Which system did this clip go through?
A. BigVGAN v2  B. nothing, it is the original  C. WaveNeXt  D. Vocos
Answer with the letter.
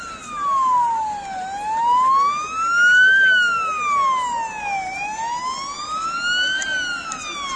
B